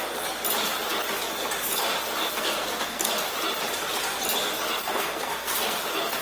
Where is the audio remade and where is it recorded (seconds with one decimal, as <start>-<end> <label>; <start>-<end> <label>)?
0.0-2.2 recorded; 2.2-3.1 remade; 3.1-4.8 recorded; 4.8-5.8 remade; 5.8-6.2 recorded